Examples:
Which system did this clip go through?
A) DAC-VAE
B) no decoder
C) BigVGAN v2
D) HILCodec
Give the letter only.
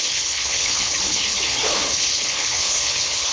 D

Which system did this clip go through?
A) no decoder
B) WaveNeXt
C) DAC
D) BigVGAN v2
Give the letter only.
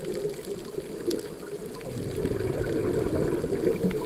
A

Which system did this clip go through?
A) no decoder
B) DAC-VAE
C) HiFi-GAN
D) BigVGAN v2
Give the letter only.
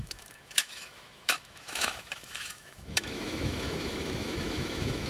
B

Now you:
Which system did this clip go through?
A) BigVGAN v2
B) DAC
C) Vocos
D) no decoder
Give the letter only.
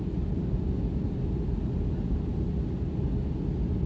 D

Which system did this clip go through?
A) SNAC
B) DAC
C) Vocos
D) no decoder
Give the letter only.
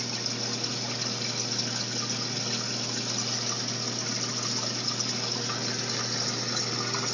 D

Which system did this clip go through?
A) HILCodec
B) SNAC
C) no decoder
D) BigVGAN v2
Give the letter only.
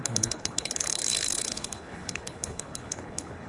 A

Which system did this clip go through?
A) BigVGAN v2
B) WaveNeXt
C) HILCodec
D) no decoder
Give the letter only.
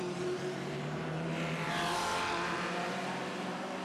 A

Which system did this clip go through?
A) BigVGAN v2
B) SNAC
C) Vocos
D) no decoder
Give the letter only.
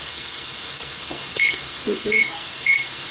B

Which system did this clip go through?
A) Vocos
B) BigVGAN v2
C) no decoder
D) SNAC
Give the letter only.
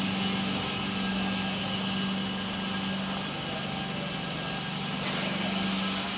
C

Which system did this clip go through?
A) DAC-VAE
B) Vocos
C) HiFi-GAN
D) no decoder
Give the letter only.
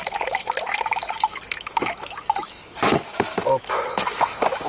A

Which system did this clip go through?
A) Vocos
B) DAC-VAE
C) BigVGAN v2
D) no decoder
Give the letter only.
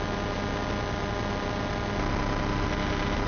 D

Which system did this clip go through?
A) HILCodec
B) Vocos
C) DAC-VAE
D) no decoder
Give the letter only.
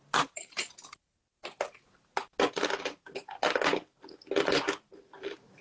D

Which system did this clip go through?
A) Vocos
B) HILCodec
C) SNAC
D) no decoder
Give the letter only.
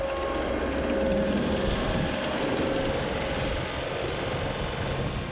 D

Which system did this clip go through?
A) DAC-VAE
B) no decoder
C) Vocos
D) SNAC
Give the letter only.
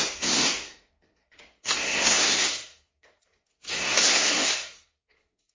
D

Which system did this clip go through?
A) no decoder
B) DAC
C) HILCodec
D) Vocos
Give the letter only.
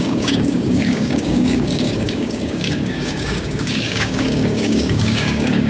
B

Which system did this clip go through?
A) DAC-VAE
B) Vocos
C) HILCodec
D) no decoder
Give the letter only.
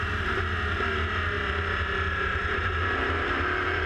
D